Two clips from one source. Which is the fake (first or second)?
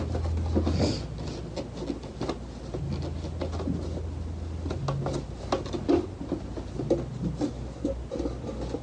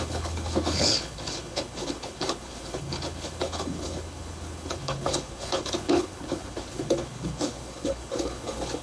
second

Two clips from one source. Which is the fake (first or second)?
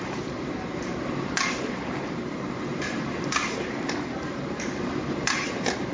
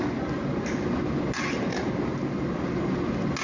first